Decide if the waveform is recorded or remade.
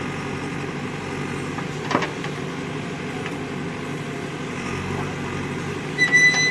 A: recorded